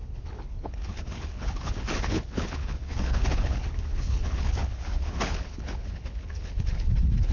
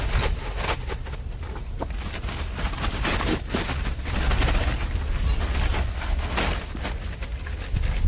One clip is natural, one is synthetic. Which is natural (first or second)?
second